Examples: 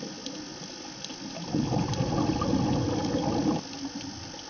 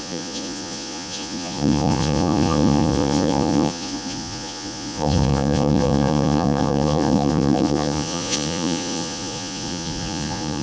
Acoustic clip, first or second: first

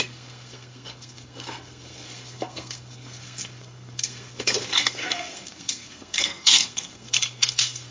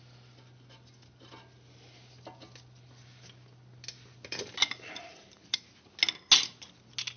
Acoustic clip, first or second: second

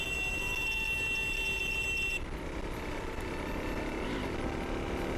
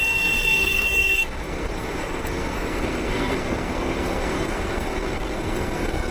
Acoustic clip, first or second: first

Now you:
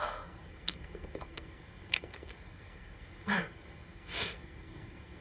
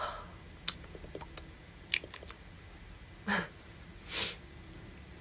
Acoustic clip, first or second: second